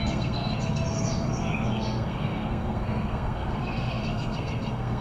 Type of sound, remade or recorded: remade